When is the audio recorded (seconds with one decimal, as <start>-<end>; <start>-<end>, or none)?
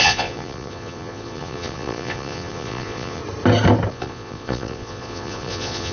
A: 3.2-3.9